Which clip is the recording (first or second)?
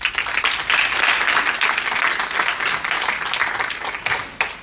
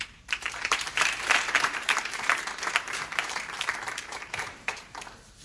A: first